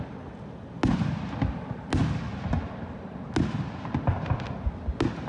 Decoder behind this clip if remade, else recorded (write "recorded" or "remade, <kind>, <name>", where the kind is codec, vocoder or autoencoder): recorded